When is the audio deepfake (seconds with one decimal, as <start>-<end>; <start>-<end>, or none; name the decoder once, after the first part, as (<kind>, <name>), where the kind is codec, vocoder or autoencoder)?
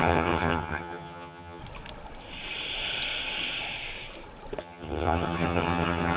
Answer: 0.0-1.6 (vocoder, HiFi-GAN); 4.6-6.2